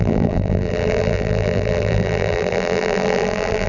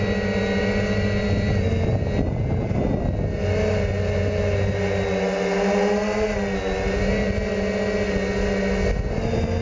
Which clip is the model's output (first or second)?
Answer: first